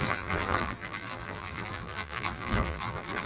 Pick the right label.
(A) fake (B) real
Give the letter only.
A